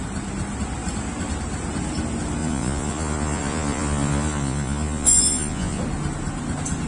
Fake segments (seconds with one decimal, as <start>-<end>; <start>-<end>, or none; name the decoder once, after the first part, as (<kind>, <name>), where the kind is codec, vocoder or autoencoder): 2.4-5.8 (vocoder, Vocos)